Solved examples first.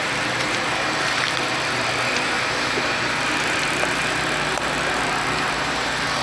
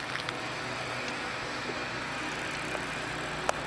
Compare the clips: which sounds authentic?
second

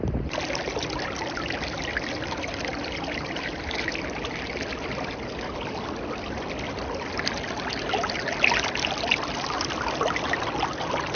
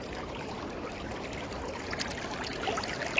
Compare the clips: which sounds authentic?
first